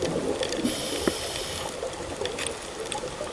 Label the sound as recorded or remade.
recorded